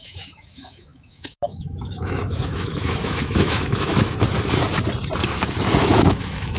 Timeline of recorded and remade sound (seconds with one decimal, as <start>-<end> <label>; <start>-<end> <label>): 0.0-3.9 remade; 3.9-5.8 recorded; 5.8-6.6 remade